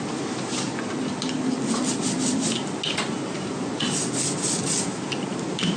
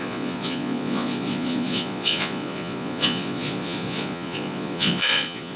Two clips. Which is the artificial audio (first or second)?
second